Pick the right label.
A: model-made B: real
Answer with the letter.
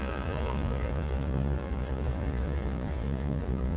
A